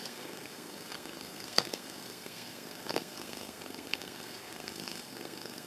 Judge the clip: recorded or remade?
remade